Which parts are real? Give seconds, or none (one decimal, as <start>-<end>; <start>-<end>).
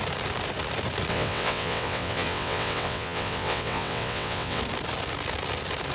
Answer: 0.0-1.1; 4.6-5.9